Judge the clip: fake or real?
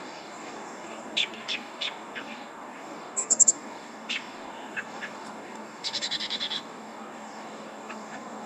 fake